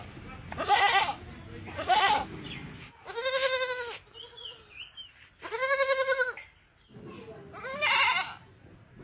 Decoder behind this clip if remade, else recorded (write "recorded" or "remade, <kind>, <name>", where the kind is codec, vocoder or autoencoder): recorded